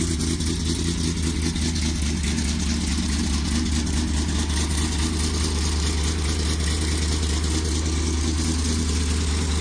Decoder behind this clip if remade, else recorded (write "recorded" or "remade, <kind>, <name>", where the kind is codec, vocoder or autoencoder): recorded